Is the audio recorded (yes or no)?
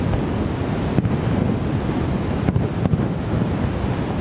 yes